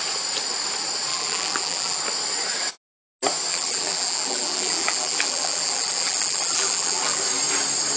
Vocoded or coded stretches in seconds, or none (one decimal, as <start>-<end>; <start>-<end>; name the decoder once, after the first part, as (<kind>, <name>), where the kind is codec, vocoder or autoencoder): 1.1-2.0 (vocoder, BigVGAN v2); 3.5-7.2